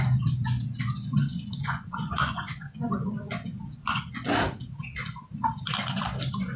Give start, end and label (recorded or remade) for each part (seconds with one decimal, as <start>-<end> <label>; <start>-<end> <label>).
0.0-1.2 recorded; 1.2-4.3 remade; 4.3-6.6 recorded